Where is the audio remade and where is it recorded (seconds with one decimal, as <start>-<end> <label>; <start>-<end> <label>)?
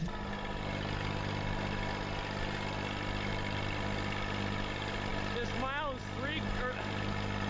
0.0-7.5 recorded